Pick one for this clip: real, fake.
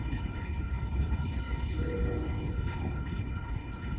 fake